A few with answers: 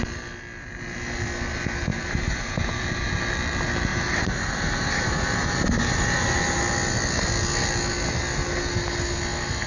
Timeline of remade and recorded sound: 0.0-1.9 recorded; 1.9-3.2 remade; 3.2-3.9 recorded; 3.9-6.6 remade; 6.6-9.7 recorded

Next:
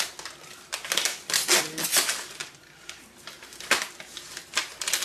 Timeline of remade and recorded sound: 0.0-2.4 recorded; 2.4-3.4 remade; 3.4-5.0 recorded

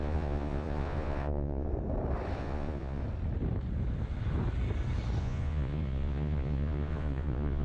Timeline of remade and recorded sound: 0.0-1.7 remade; 1.7-2.4 recorded; 2.4-3.0 remade; 3.0-5.2 recorded; 5.2-7.6 remade

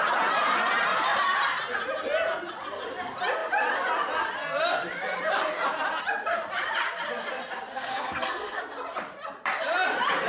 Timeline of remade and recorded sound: 0.0-7.7 recorded; 7.7-8.6 remade; 8.6-10.3 recorded

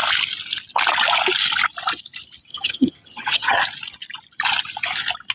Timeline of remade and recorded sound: 0.0-2.5 recorded; 2.5-3.6 remade; 3.6-5.3 recorded

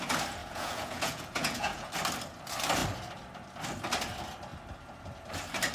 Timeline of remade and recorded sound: 0.0-0.4 recorded; 0.4-1.9 remade; 1.9-5.7 recorded